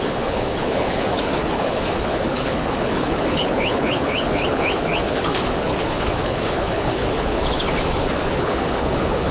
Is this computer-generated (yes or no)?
yes